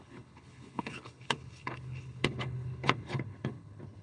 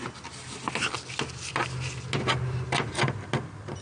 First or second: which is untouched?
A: second